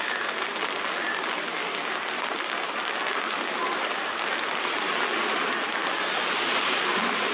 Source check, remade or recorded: recorded